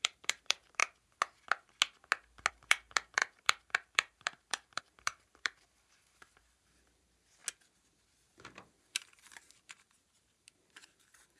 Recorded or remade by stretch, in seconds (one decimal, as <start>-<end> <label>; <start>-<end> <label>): 0.0-0.8 remade; 0.8-2.5 recorded; 2.5-7.4 remade; 7.4-8.4 recorded; 8.4-11.4 remade